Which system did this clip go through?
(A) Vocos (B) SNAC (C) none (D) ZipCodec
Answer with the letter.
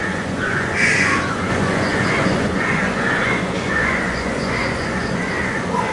A